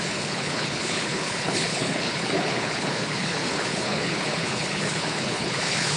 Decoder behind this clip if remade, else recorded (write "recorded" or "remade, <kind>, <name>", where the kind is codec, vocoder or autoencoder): remade, codec, HILCodec